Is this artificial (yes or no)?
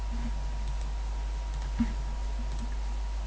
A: no